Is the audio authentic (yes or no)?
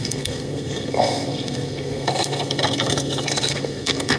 no